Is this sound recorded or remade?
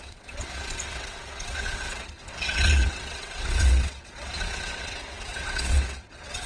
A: remade